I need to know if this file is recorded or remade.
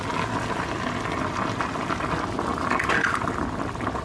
recorded